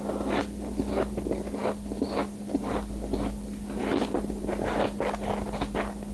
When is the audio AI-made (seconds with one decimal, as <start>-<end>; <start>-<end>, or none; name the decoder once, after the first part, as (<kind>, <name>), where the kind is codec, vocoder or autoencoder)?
none